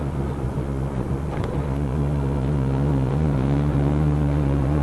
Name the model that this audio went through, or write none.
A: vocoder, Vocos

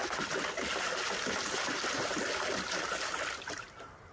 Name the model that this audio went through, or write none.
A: none